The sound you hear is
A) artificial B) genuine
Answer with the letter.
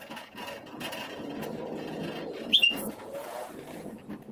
A